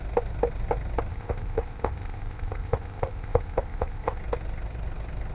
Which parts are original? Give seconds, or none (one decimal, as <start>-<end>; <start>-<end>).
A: 0.0-1.1; 4.2-5.3